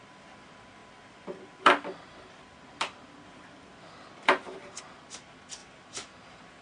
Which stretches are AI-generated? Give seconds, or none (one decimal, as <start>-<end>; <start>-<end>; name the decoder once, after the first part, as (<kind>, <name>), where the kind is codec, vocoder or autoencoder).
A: 0.8-4.8 (vocoder, BigVGAN v2); 5.6-6.6